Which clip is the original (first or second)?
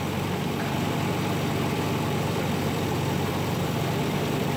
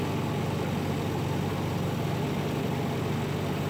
second